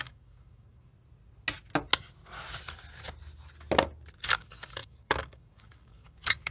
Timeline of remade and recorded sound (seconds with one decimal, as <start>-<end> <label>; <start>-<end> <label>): 0.0-0.9 remade; 0.9-4.2 recorded; 4.2-6.5 remade